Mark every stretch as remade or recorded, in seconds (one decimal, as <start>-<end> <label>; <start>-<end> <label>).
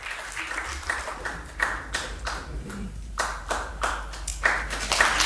0.0-0.7 recorded; 0.7-3.9 remade; 3.9-5.3 recorded